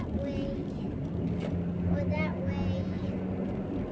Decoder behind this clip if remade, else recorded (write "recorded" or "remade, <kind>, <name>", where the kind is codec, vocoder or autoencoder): recorded